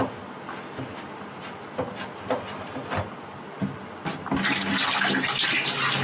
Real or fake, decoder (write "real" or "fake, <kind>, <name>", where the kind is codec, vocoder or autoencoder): real